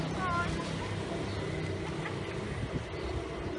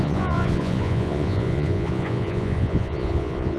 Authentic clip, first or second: first